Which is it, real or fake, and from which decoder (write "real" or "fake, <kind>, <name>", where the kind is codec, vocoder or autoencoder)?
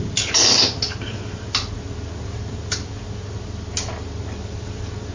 real